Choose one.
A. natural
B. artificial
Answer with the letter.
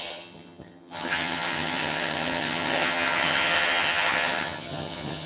B